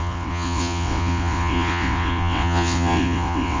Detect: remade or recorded remade